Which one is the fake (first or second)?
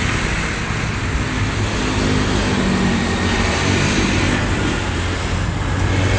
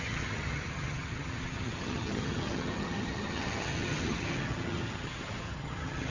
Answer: second